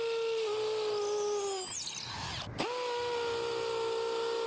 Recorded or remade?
recorded